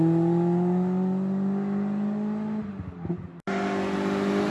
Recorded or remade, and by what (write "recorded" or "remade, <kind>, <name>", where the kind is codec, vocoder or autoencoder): recorded